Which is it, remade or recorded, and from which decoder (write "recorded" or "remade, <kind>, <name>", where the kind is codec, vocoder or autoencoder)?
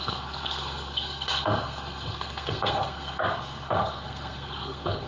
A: remade, codec, SNAC